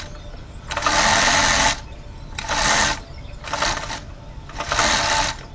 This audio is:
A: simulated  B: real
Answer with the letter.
A